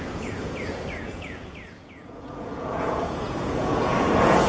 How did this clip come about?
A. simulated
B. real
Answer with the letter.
A